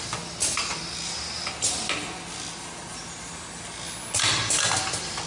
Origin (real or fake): real